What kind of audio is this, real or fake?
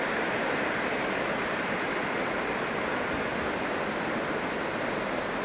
fake